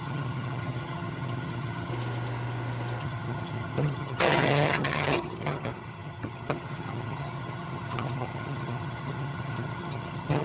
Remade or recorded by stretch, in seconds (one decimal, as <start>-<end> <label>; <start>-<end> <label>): 0.0-1.9 remade; 1.9-3.0 recorded; 3.0-10.4 remade